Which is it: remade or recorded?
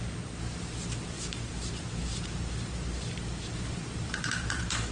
remade